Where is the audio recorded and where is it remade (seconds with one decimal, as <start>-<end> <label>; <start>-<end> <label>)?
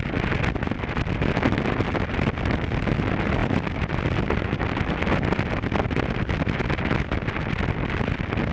0.0-8.5 recorded